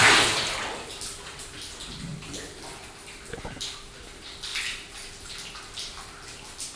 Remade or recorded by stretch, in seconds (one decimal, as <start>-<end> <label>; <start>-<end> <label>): 0.0-6.8 recorded